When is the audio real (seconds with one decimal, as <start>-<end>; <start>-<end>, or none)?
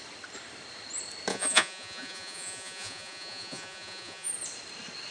0.0-1.3; 4.3-5.1